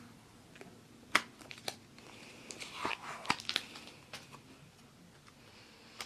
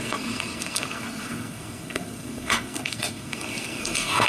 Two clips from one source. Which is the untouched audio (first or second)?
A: first